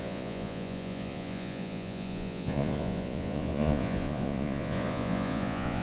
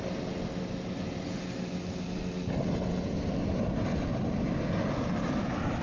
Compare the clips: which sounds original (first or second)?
second